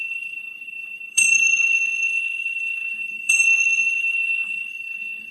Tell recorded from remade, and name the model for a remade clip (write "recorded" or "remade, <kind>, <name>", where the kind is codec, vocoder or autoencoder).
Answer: remade, codec, HILCodec